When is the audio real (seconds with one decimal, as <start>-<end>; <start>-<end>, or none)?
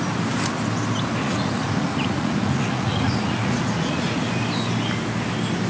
0.0-1.2; 4.3-5.7